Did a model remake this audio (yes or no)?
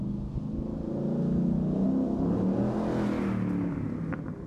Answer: no